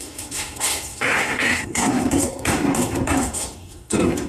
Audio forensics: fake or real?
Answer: fake